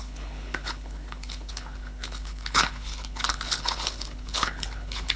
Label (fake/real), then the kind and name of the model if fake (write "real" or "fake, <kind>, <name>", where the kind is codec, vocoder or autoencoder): fake, codec, HILCodec